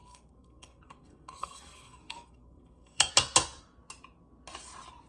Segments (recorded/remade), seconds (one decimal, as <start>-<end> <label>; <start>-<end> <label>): 0.0-3.1 remade; 3.1-5.1 recorded